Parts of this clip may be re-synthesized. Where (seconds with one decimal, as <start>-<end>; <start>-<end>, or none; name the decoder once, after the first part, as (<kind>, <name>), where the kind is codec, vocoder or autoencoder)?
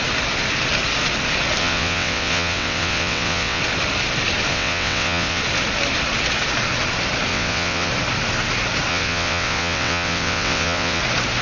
1.6-3.6 (vocoder, WaveNeXt); 4.5-5.4; 7.3-7.9; 8.9-11.0